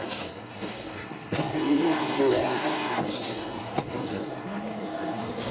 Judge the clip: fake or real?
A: fake